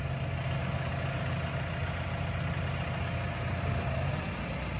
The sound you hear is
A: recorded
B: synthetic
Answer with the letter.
A